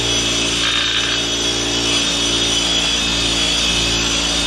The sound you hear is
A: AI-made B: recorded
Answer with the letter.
B